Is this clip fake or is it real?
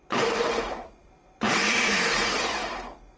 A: fake